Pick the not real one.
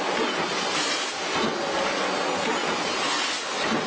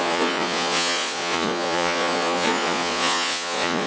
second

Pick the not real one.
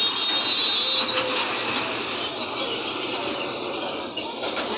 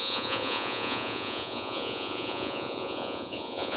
second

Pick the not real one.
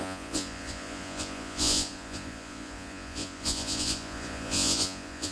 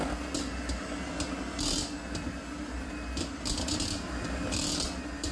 first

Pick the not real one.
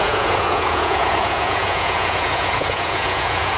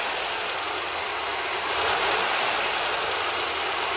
first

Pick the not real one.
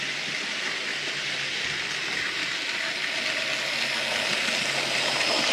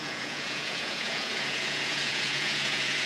second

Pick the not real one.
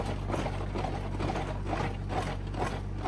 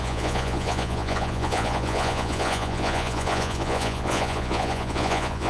second